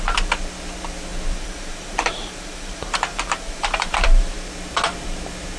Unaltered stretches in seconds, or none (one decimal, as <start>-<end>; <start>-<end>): 0.0-1.1; 4.5-5.6